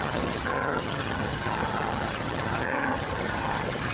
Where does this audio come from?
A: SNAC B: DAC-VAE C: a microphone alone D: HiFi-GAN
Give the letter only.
D